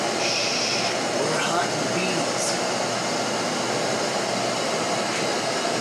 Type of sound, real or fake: real